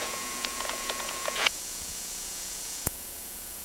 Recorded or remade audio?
remade